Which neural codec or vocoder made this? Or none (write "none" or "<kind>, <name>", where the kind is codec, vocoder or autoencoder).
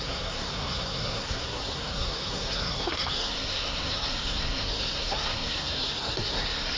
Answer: codec, SNAC